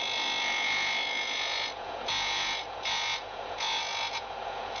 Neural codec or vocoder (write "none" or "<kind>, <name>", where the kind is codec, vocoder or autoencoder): vocoder, Vocos